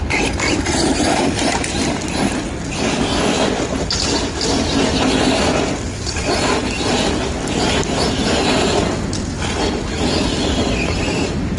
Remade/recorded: recorded